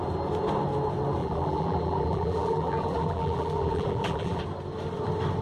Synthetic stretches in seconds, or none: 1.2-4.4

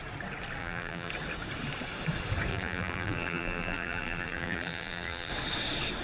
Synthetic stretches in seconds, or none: 0.6-1.1; 2.5-5.3